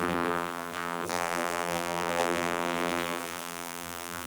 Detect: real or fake fake